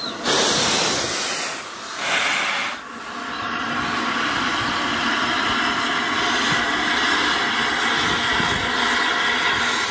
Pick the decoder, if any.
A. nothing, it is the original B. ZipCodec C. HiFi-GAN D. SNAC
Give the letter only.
A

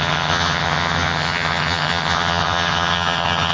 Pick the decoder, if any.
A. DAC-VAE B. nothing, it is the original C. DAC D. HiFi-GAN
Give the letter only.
D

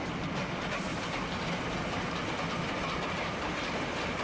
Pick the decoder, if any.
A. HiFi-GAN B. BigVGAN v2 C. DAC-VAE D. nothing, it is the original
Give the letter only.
D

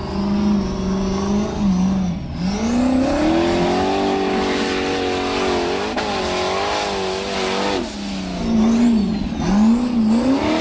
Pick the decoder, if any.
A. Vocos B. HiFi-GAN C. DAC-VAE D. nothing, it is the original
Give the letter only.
D